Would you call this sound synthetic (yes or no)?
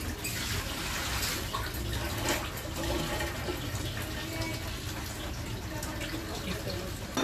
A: no